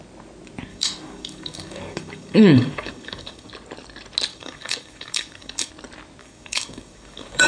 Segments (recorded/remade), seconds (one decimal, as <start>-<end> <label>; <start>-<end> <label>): 0.0-0.7 recorded; 0.7-3.5 remade; 3.5-4.3 recorded; 4.3-5.7 remade; 5.7-6.2 recorded; 6.2-7.5 remade